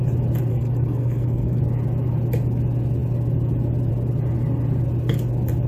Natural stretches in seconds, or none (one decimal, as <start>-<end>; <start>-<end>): 0.0-0.5; 1.6-5.7